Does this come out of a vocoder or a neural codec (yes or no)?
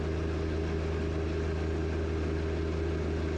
no